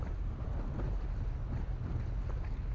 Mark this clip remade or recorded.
recorded